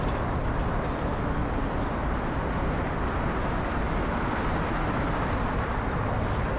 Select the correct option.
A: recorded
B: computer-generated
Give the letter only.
A